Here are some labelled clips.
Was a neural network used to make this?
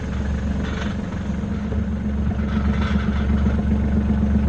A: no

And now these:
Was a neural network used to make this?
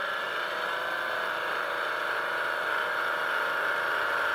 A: yes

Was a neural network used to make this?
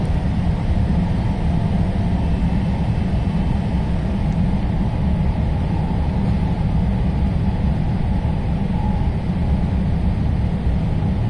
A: no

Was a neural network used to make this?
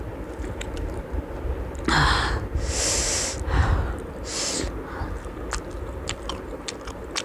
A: no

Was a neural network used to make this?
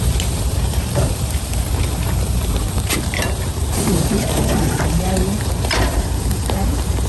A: yes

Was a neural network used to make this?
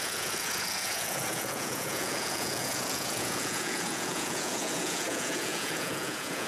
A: yes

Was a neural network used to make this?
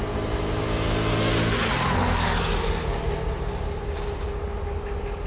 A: no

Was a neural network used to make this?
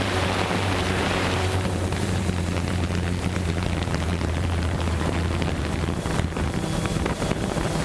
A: yes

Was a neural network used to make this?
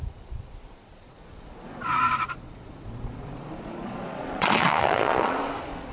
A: yes